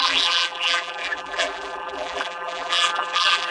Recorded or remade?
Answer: remade